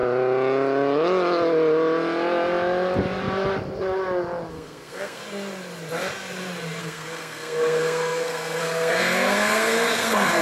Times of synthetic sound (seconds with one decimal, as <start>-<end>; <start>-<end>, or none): 4.5-5.2; 6.8-10.4